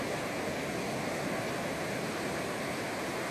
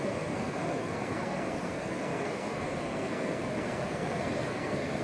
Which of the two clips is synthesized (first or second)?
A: second